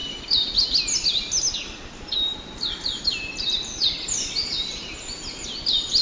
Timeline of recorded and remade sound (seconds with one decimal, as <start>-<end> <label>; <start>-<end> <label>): 0.0-6.0 recorded